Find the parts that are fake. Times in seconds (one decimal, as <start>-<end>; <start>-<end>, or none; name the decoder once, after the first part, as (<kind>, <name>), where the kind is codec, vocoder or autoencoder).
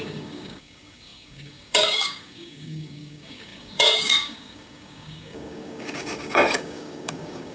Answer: 0.0-7.5 (codec, DAC)